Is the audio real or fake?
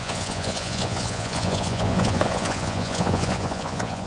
fake